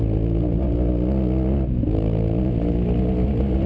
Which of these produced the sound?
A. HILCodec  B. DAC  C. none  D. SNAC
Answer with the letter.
C